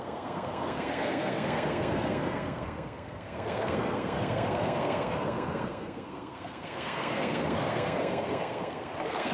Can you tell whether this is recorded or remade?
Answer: remade